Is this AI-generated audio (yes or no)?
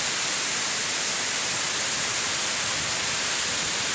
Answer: no